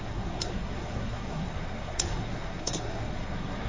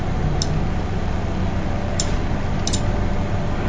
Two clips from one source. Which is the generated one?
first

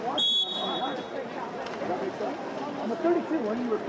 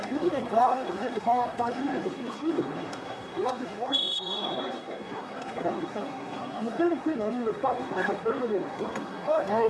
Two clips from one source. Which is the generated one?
second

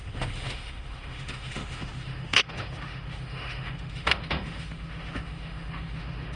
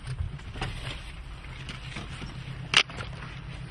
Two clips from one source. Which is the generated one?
first